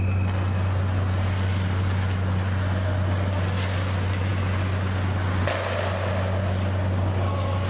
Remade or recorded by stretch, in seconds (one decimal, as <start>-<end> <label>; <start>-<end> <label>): 0.0-7.7 recorded